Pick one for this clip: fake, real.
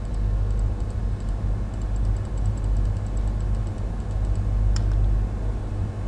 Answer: real